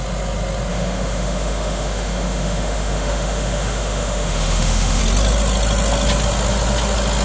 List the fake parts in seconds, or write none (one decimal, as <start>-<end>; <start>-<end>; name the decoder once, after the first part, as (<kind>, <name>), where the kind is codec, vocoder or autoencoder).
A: 0.7-5.0 (autoencoder, DAC-VAE)

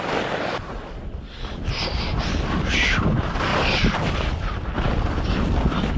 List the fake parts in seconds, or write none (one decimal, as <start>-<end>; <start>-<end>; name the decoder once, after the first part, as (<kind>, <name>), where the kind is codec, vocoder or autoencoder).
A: none